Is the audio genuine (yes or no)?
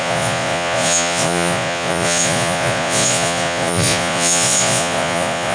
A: no